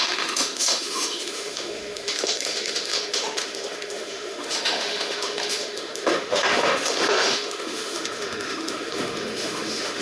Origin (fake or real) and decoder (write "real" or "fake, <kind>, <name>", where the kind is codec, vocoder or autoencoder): fake, autoencoder, DAC-VAE